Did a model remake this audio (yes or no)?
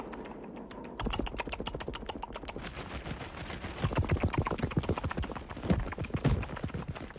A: no